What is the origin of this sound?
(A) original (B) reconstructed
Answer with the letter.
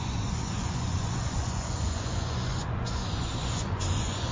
B